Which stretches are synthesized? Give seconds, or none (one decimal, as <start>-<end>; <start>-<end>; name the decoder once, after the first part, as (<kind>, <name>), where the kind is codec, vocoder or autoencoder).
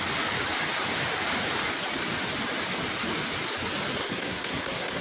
4.0-5.0 (codec, SNAC)